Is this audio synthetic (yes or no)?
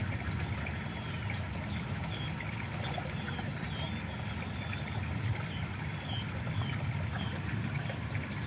no